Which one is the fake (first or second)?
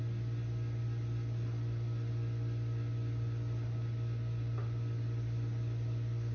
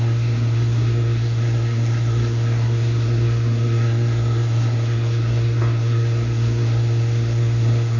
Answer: second